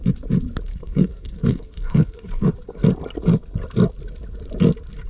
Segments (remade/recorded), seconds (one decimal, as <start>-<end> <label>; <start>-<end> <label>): 0.0-0.7 recorded; 0.7-2.5 remade; 2.5-5.1 recorded